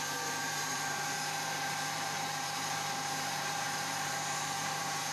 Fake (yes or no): yes